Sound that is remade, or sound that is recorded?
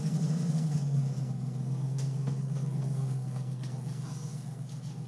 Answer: remade